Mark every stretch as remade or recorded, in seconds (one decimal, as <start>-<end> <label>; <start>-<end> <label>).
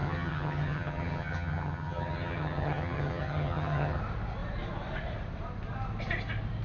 0.0-4.0 remade; 4.0-6.6 recorded